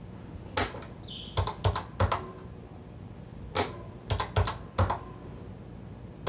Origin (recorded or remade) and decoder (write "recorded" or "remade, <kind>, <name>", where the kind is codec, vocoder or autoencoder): recorded